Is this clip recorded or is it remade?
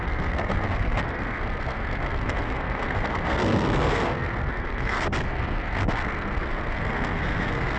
remade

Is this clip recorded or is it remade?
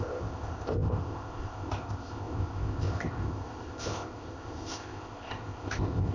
remade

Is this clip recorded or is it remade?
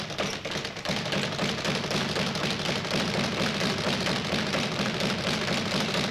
recorded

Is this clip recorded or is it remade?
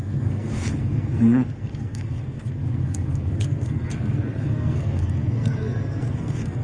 remade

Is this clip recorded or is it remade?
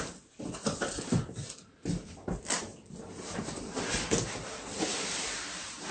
recorded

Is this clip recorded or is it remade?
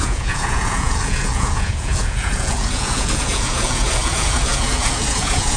remade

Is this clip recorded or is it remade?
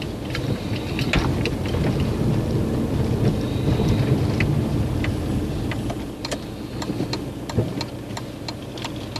recorded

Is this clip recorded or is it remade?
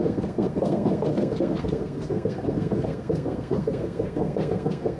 remade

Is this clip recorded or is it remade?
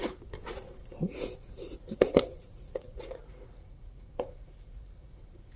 remade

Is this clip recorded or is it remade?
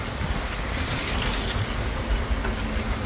recorded